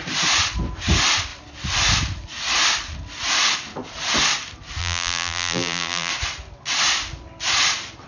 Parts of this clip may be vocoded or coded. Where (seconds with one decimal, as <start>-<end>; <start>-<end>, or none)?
4.8-6.1